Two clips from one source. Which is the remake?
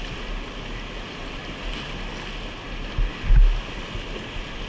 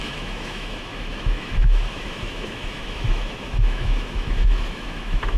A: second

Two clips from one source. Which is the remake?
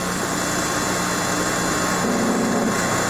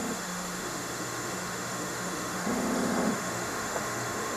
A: second